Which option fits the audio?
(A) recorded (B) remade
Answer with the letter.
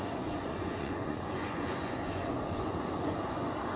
B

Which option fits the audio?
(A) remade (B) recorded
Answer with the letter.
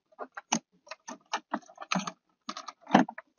B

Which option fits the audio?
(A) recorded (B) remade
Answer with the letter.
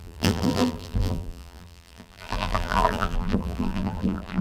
B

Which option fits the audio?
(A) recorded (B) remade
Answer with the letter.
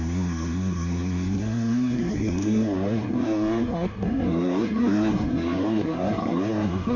B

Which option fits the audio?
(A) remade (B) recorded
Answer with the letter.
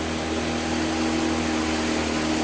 B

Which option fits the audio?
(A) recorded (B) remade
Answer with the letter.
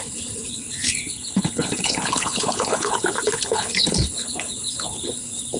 B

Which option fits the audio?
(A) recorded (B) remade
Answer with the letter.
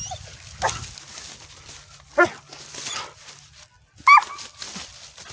A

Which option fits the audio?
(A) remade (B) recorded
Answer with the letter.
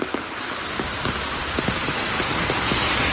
B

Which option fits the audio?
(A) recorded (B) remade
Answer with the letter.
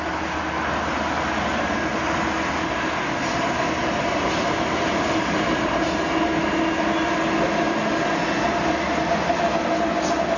A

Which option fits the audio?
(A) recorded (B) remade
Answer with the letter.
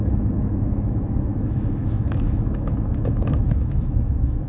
B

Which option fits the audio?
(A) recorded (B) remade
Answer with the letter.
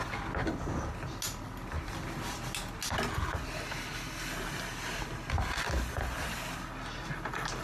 A